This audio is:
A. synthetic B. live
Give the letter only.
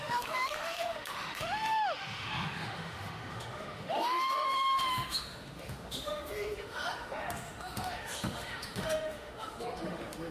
A